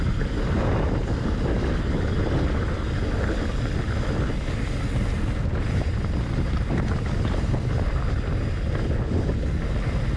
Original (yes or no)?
yes